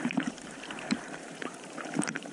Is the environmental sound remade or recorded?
remade